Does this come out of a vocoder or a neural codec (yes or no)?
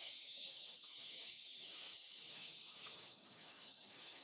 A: yes